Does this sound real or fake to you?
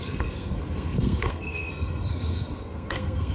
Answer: fake